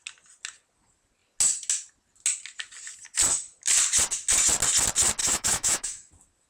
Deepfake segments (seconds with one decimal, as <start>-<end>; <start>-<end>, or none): 5.2-6.1